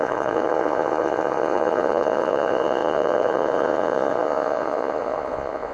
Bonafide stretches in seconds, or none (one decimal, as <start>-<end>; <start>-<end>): none

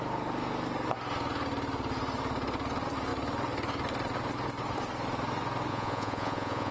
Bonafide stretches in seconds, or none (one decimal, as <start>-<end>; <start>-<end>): 0.0-5.7

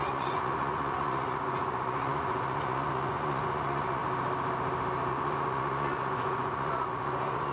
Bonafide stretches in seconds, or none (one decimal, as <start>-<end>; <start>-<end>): 4.0-5.1